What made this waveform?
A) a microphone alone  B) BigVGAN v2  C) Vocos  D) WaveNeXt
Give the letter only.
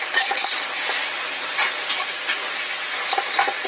B